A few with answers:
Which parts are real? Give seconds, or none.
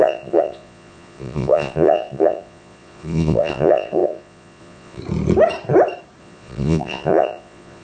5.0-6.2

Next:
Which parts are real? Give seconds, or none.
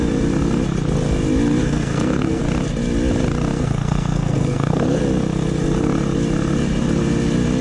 0.0-1.6; 2.4-3.5; 5.0-7.6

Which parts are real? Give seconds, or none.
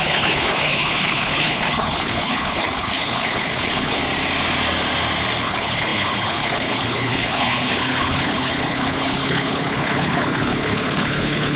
4.0-5.4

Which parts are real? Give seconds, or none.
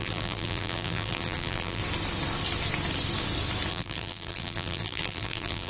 1.8-3.7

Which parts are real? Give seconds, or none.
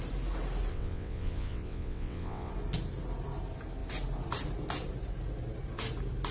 0.0-0.7; 2.5-6.3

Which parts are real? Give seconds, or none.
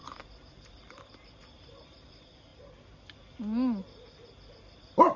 2.5-4.5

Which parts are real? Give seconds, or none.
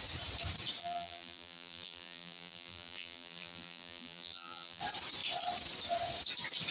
0.0-0.8; 4.8-6.7